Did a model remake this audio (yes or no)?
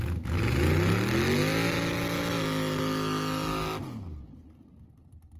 no